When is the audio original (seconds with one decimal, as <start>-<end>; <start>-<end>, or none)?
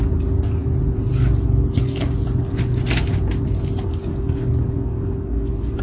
0.0-4.1